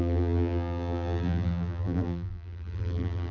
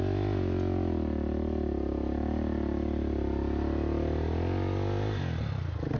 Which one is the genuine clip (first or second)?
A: second